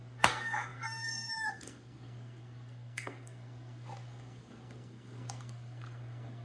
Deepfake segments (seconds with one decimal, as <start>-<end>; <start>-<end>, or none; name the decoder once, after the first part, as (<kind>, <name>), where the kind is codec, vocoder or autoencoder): 0.0-6.4 (codec, SNAC)